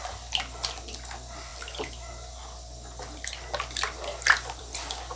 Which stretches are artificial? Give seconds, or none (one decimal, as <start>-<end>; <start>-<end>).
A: none